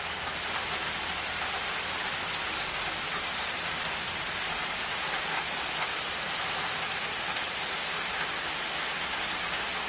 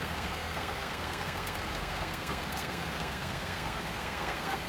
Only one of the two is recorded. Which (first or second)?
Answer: first